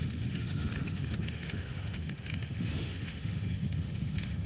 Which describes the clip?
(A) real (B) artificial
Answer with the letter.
B